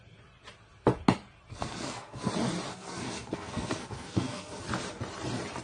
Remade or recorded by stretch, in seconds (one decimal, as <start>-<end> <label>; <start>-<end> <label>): 0.0-1.5 recorded; 1.5-2.3 remade; 2.3-2.7 recorded; 2.7-4.6 remade; 4.6-5.6 recorded